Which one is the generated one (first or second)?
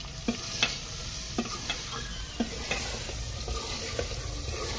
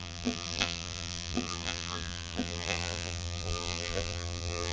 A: second